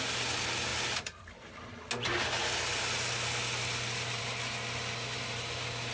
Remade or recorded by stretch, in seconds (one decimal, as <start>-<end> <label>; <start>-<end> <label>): 0.0-5.9 recorded